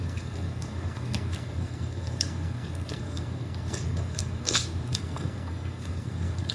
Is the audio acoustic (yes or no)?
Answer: no